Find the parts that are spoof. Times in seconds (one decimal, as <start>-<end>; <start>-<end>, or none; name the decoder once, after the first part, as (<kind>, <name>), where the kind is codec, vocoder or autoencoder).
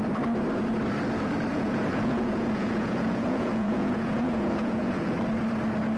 1.5-5.1 (vocoder, Vocos)